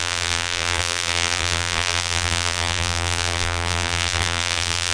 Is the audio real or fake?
fake